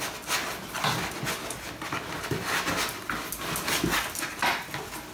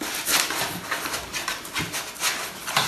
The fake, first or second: second